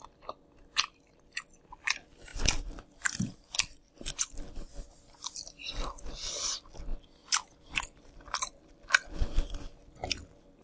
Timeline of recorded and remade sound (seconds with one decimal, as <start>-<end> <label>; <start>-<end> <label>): 0.0-4.7 remade; 4.7-6.1 recorded; 6.1-6.9 remade; 6.9-7.6 recorded; 7.6-10.6 remade